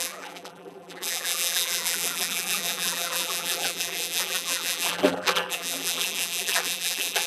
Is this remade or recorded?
remade